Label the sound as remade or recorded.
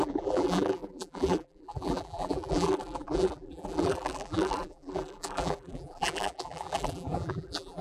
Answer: remade